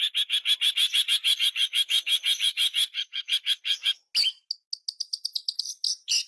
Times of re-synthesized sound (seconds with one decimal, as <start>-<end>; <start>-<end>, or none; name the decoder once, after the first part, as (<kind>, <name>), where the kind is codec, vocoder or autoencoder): 1.6-4.1 (autoencoder, DAC-VAE)